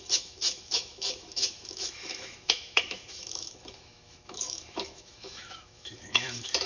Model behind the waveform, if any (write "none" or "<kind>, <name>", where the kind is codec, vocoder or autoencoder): autoencoder, DAC-VAE